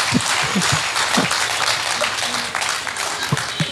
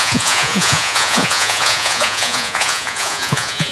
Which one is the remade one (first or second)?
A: second